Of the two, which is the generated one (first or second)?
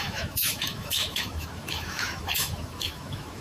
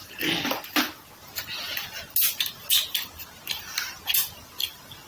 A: first